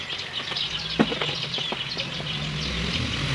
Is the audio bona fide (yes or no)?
yes